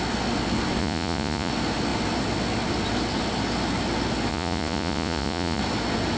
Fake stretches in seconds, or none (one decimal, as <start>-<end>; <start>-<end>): 0.8-1.5; 4.3-5.6